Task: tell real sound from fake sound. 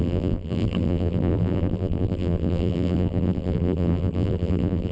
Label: fake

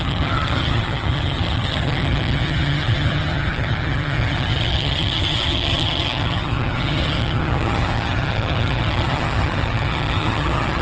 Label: fake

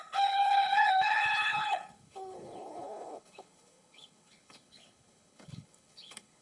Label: fake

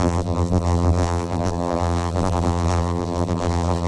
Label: fake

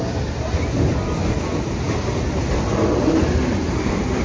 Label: real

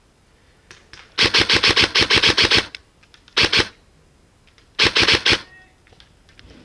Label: real